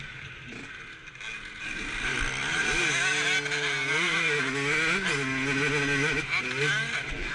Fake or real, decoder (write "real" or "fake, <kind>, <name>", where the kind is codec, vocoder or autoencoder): real